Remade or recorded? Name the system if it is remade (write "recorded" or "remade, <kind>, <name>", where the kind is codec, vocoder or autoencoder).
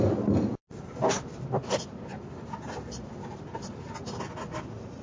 recorded